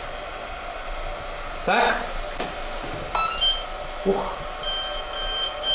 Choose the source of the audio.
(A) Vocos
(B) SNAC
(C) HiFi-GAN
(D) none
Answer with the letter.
D